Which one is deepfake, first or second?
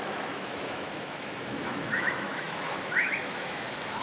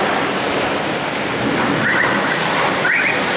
first